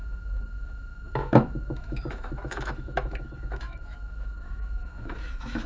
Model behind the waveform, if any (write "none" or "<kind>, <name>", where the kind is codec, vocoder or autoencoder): autoencoder, DAC-VAE